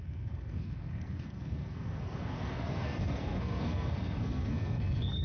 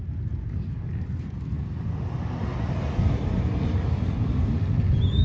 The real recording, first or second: second